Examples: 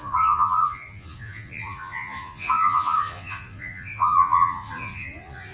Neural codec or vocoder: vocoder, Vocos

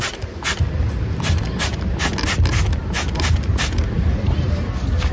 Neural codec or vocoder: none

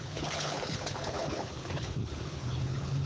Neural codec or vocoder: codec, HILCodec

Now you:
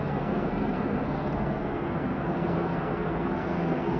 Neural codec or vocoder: codec, SNAC